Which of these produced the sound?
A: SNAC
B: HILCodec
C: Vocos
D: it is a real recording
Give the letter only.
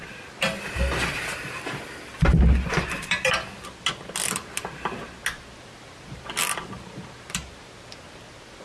D